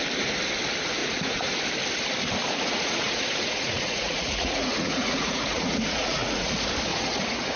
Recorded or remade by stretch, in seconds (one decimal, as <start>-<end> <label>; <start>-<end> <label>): 0.0-1.0 recorded; 1.0-1.6 remade; 1.6-2.4 recorded; 2.4-6.5 remade; 6.5-6.9 recorded; 6.9-7.6 remade